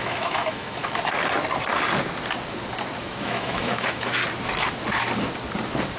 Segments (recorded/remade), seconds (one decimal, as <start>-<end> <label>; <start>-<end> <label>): 0.0-0.8 remade; 0.8-3.0 recorded; 3.0-4.2 remade; 4.2-6.0 recorded

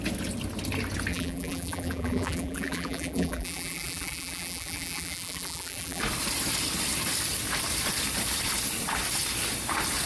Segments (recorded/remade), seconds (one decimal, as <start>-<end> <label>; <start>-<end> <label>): 0.0-1.1 recorded; 1.1-6.0 remade; 6.0-10.1 recorded

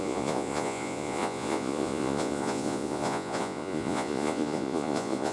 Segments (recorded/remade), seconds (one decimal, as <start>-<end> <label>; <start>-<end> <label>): 0.0-5.3 remade

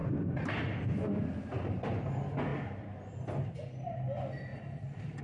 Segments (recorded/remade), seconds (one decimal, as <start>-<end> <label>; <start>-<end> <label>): 0.0-4.5 recorded; 4.5-5.2 remade